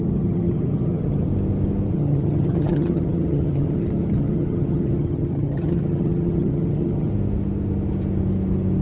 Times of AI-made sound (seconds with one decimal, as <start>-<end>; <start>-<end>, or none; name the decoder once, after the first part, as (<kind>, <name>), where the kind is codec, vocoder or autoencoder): 0.0-1.3 (vocoder, HiFi-GAN); 1.9-7.1